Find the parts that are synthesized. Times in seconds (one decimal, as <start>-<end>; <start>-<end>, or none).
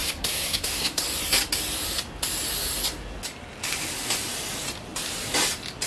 0.0-1.0